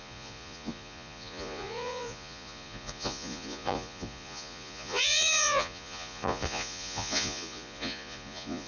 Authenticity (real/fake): fake